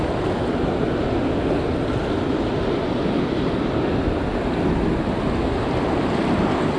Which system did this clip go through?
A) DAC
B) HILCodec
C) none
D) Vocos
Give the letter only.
C